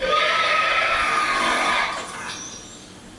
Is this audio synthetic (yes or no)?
no